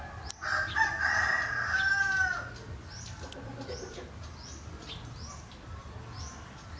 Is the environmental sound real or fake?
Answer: real